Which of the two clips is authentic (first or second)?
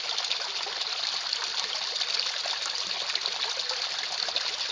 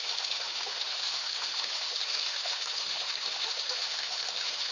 first